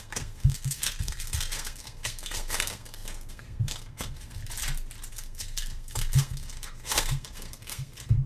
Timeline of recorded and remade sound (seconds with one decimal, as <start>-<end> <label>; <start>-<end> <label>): 0.0-4.4 remade; 4.4-5.1 recorded; 5.1-8.3 remade